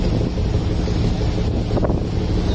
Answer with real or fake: real